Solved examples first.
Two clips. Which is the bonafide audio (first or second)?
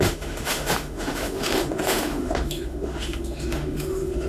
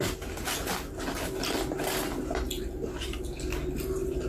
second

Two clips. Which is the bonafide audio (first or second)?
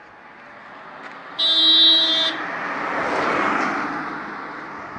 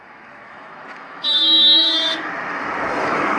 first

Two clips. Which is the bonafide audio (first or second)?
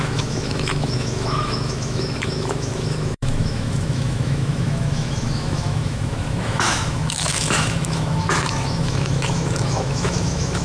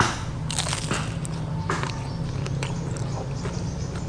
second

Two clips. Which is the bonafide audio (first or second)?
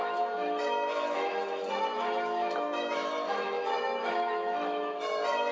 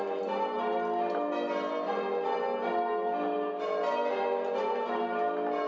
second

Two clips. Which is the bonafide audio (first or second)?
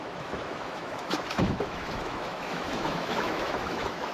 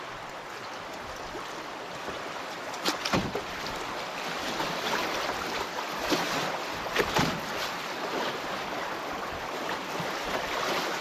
second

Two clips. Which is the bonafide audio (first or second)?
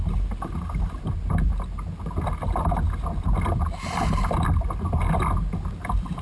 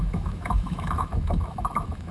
first